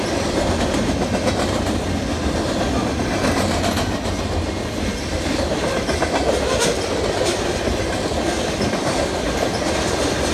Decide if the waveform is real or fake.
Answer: real